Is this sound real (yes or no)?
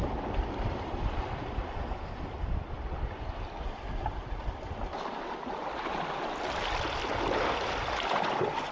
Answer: yes